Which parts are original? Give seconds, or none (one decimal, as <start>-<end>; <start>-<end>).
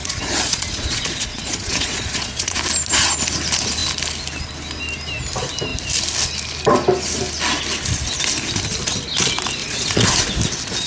2.6-9.6; 10.1-10.9